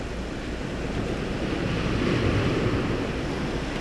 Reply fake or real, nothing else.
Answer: real